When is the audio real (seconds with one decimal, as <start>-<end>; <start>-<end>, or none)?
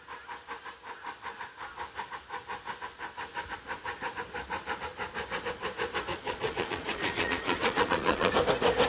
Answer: 0.0-6.1; 8.3-8.9